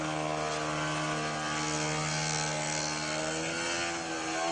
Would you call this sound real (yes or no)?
yes